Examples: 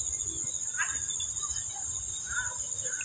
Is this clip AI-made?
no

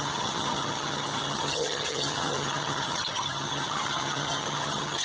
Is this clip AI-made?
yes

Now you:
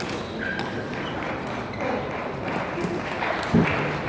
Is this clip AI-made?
no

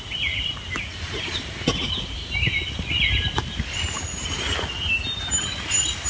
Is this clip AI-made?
no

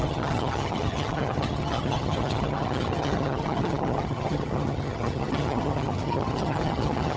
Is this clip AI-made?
yes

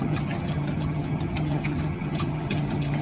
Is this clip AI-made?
yes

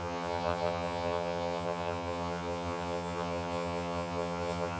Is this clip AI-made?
yes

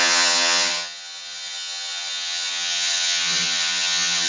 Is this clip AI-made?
yes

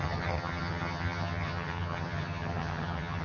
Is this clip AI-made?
yes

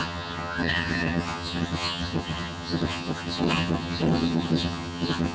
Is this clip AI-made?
yes